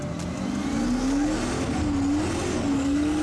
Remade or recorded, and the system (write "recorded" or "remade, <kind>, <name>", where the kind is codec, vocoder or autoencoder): recorded